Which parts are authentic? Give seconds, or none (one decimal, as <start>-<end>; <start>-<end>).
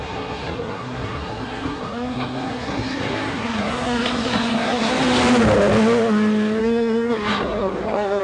4.9-6.6